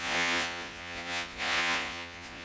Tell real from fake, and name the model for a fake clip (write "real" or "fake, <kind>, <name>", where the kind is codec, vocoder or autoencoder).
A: fake, vocoder, Vocos